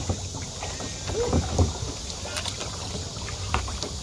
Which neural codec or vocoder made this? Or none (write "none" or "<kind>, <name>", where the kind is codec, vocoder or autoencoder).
none